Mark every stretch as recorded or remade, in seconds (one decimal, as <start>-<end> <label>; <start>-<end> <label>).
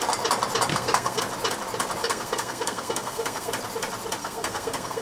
0.0-0.7 recorded; 0.7-1.2 remade; 1.2-2.0 recorded; 2.0-3.5 remade; 3.5-4.2 recorded; 4.2-5.0 remade